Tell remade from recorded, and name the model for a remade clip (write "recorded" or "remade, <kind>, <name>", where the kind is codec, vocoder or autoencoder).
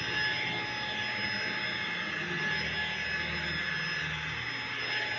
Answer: recorded